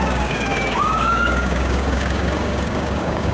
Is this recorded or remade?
remade